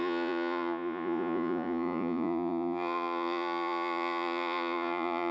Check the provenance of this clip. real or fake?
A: fake